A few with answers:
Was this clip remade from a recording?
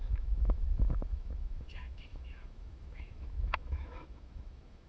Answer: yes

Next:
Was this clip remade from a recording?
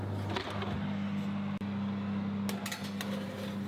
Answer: no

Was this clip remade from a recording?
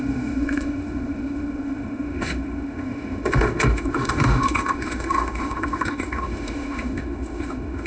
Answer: yes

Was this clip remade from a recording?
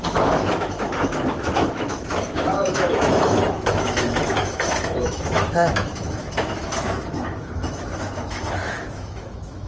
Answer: yes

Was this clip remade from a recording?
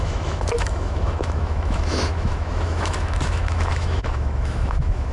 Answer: yes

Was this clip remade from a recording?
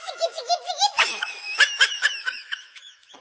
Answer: yes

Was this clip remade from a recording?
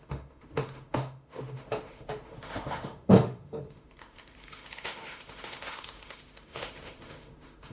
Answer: yes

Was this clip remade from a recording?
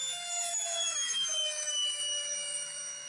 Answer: yes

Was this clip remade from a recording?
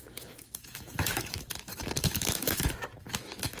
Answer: yes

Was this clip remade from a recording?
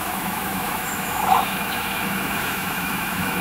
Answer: yes